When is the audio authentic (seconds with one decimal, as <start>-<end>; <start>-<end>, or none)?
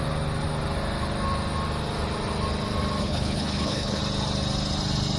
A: 0.0-3.0; 4.0-5.2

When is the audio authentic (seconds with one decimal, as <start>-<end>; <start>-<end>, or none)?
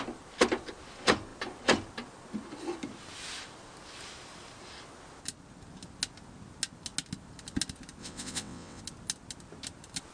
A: 0.0-8.0; 8.8-10.1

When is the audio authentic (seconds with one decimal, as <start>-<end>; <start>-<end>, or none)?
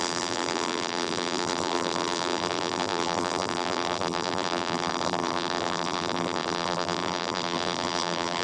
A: none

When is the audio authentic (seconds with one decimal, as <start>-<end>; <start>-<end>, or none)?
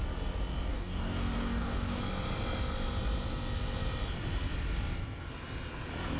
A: 0.0-0.7; 2.0-6.2